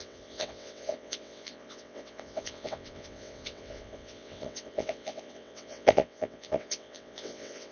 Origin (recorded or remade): remade